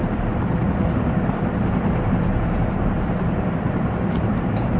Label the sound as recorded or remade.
remade